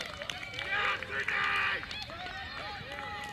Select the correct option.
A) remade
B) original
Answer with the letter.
B